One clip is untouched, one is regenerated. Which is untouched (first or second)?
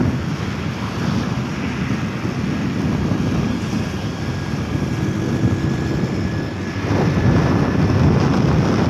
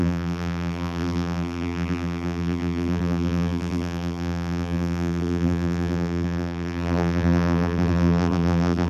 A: first